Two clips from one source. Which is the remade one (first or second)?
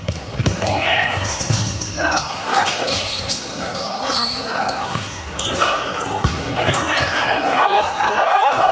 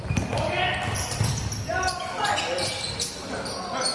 first